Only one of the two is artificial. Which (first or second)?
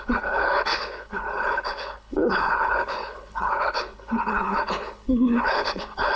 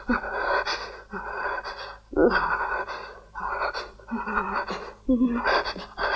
first